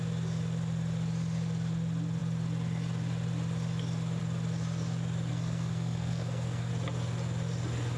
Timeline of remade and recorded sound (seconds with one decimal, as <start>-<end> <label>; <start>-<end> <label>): 0.0-5.3 recorded; 5.3-6.7 remade; 6.7-8.0 recorded